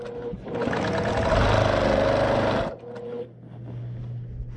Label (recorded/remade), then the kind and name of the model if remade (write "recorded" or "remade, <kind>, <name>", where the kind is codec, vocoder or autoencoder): recorded